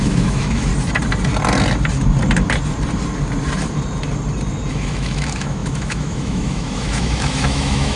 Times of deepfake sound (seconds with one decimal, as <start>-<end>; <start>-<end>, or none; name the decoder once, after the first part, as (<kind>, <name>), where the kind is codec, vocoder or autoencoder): 0.0-0.7 (autoencoder, DAC-VAE); 4.7-8.0